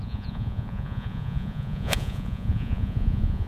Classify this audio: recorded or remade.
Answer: remade